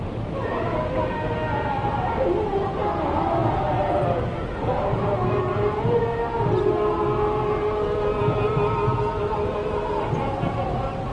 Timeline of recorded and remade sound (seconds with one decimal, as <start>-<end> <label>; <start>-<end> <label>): 0.0-11.1 recorded